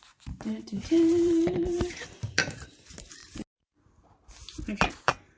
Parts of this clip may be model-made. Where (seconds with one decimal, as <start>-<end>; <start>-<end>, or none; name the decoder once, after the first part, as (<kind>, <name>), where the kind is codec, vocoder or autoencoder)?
0.0-3.2 (vocoder, BigVGAN v2); 4.9-5.4